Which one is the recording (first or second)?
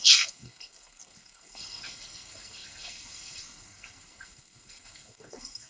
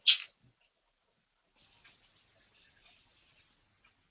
second